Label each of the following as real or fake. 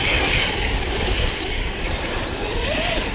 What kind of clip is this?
real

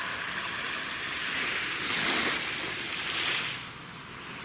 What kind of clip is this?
real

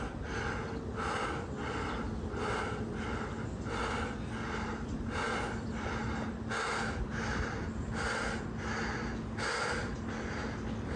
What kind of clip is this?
real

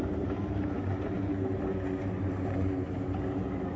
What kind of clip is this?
real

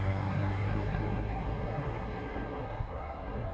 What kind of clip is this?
fake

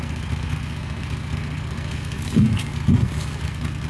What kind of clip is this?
fake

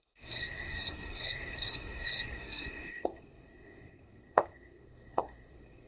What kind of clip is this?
fake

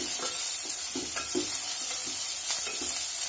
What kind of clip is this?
real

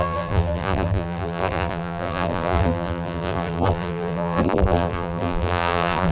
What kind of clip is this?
fake